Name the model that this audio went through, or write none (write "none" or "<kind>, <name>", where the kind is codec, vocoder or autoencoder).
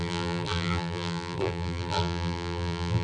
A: vocoder, BigVGAN v2